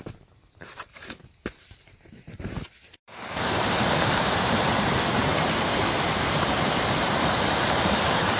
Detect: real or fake fake